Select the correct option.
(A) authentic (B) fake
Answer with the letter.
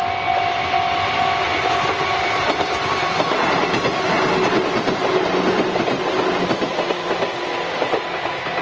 A